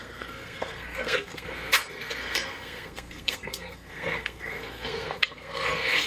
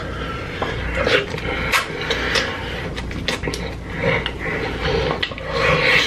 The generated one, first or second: first